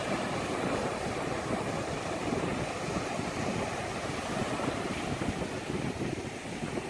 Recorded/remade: recorded